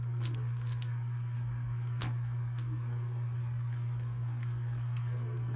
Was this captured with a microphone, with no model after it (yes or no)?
no